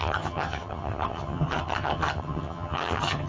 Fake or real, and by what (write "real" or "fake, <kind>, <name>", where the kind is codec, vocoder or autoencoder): fake, vocoder, HiFi-GAN